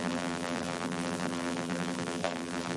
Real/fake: fake